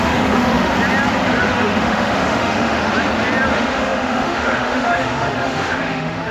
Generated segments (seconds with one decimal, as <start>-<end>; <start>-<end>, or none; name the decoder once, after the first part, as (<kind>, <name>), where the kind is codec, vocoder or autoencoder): 0.0-0.7 (autoencoder, DAC-VAE); 1.4-2.9; 3.5-6.3